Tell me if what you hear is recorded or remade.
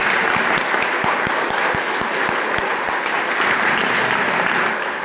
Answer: recorded